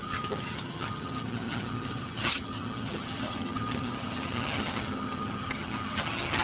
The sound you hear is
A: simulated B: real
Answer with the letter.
A